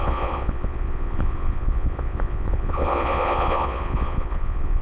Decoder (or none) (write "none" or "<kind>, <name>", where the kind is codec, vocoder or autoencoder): vocoder, Vocos